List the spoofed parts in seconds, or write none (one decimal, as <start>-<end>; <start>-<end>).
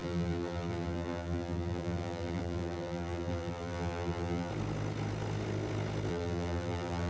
0.0-4.5; 6.1-7.1